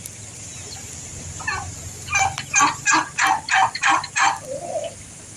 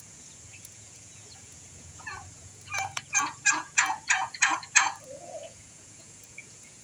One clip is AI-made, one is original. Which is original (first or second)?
first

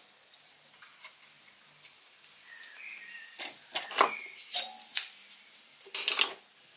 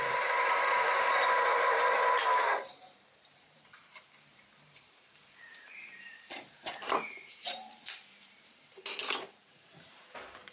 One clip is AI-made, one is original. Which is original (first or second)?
first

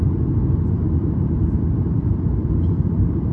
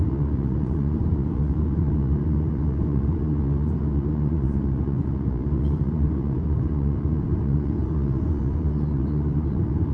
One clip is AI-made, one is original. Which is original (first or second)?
first